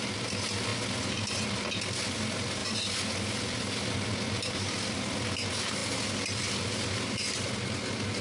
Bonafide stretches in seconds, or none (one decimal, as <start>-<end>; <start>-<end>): 0.0-8.2